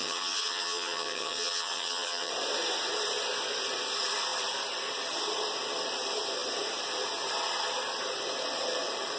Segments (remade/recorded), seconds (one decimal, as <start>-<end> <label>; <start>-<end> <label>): 0.0-2.3 remade; 2.3-9.2 recorded